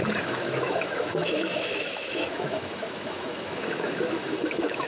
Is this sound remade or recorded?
remade